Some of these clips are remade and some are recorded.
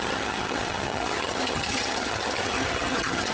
remade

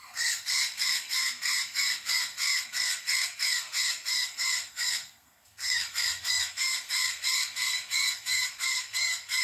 remade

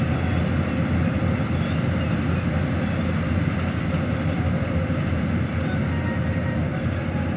recorded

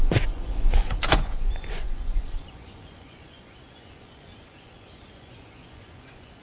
remade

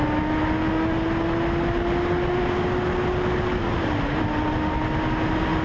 recorded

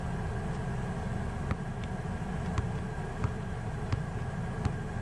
recorded